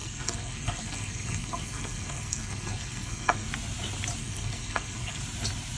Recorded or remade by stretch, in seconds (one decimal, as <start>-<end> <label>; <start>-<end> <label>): 0.0-3.5 remade; 3.5-4.2 recorded; 4.2-5.2 remade; 5.2-5.8 recorded